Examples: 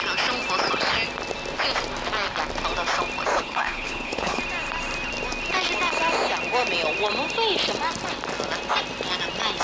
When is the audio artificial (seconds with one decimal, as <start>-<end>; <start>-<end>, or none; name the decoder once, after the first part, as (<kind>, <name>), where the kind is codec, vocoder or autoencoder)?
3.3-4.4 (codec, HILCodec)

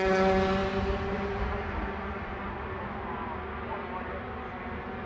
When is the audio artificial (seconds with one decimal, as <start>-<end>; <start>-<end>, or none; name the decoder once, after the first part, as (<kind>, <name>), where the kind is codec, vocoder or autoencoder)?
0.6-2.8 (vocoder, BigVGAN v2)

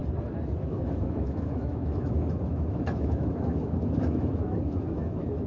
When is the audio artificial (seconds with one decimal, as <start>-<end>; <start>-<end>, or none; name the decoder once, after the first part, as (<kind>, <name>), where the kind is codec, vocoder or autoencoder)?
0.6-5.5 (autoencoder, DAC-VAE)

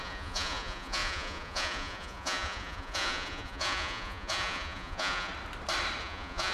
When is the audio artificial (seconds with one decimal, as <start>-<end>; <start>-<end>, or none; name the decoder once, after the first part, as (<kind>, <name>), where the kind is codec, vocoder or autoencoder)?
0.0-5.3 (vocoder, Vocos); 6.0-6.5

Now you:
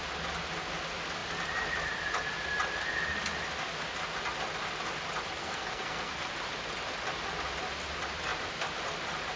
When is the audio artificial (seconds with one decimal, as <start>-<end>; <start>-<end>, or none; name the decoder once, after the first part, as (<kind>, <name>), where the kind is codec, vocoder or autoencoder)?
5.4-6.3 (codec, SNAC)